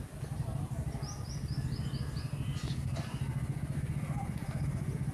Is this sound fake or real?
real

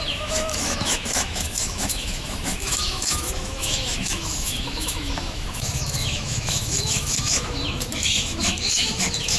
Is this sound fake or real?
fake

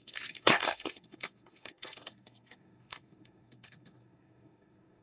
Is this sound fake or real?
fake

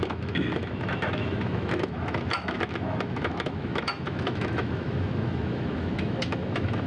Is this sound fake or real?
fake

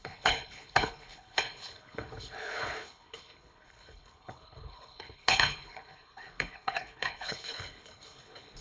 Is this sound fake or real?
fake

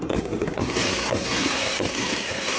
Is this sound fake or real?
fake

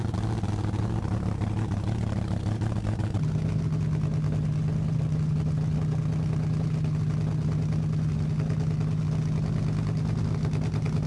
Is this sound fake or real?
real